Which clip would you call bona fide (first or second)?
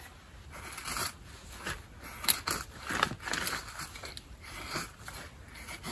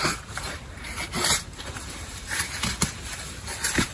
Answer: first